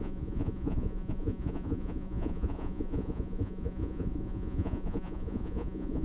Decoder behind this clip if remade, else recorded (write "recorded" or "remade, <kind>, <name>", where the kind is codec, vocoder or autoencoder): remade, vocoder, Vocos